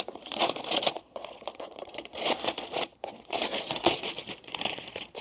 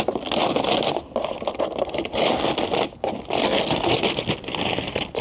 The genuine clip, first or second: second